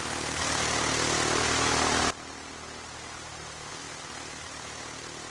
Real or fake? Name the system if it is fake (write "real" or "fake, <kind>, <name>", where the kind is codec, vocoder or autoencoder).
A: real